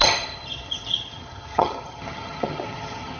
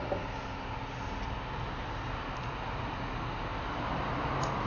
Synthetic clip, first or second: first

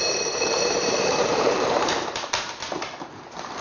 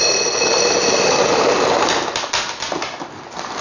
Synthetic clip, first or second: first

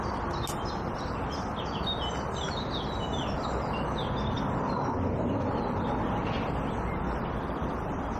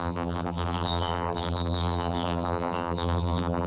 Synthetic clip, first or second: second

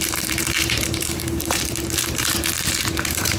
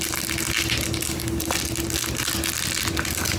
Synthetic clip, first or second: first